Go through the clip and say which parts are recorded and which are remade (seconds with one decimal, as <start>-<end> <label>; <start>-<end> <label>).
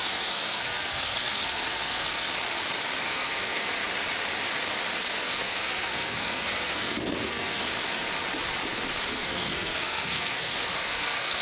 0.0-2.3 remade; 2.3-3.0 recorded; 3.0-3.7 remade; 3.7-5.1 recorded; 5.1-7.7 remade; 7.7-9.1 recorded; 9.1-11.4 remade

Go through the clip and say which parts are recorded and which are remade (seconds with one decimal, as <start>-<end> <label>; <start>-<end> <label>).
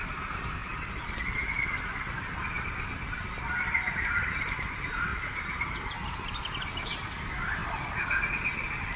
0.0-5.1 remade; 5.1-6.6 recorded; 6.6-9.0 remade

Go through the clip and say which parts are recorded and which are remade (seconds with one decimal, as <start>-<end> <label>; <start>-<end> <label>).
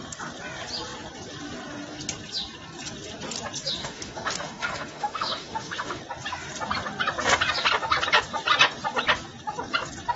0.0-3.8 recorded; 3.8-6.0 remade; 6.0-10.2 recorded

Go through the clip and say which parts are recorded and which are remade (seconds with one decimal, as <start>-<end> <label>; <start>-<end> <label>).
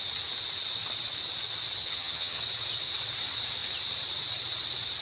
0.0-1.8 recorded; 1.8-2.4 remade; 2.4-5.0 recorded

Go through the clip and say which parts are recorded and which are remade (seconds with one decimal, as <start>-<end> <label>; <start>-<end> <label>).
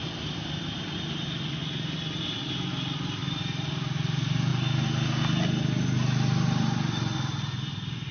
0.0-8.1 recorded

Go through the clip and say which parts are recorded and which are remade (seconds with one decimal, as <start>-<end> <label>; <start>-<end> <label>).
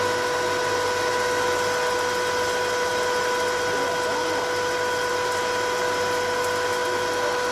0.0-7.5 recorded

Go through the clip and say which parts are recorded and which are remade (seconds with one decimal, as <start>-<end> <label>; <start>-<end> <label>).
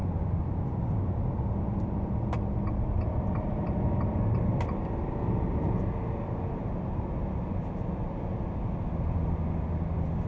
0.0-10.3 recorded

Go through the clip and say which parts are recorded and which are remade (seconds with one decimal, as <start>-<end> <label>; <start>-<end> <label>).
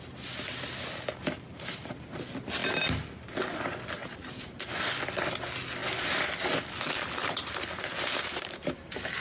0.0-4.0 recorded; 4.0-4.8 remade; 4.8-7.2 recorded; 7.2-9.2 remade